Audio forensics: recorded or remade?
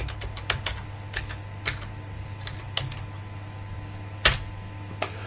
recorded